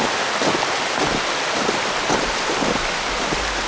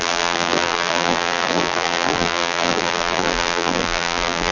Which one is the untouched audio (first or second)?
first